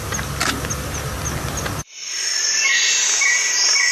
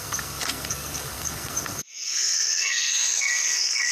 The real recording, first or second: first